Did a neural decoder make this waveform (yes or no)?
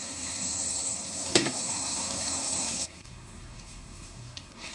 yes